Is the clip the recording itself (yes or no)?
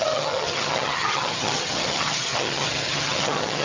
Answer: no